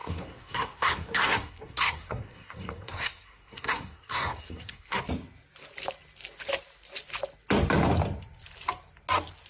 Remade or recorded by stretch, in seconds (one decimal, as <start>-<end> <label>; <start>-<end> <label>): 0.0-5.0 remade; 5.0-9.5 recorded